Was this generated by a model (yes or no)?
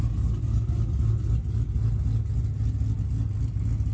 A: no